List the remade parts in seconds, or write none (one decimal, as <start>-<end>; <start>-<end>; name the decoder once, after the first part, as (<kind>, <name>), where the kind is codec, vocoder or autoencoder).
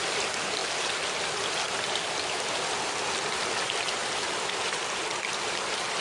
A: none